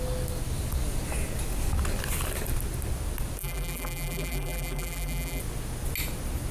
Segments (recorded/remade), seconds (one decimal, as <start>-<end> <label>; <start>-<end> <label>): 0.0-3.4 recorded; 3.4-5.4 remade; 5.4-6.5 recorded

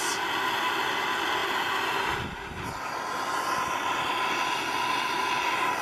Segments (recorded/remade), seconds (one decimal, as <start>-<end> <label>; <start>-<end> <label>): 0.0-5.8 recorded